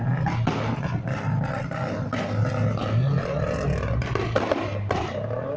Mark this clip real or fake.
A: real